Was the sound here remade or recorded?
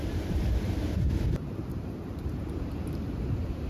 remade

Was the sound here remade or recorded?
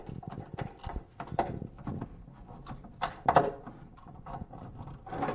remade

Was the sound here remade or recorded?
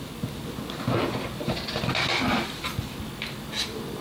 recorded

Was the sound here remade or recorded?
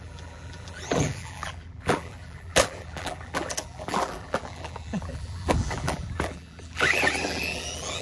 remade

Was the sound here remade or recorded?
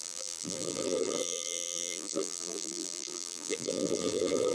remade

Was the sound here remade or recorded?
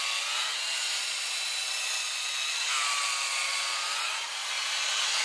remade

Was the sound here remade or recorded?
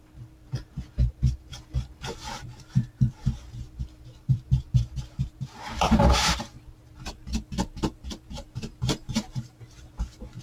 remade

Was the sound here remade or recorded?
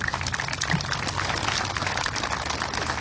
recorded